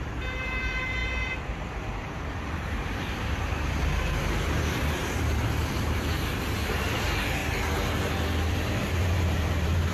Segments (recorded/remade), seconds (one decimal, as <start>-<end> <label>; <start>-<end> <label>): 0.0-7.4 remade; 7.4-8.5 recorded; 8.5-9.9 remade